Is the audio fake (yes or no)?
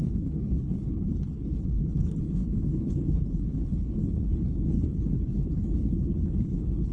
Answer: yes